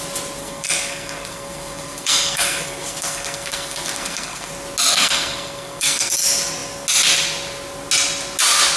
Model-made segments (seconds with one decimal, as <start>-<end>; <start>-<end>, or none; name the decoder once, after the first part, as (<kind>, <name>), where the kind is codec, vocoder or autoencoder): 0.4-4.5 (codec, SNAC); 4.9-6.1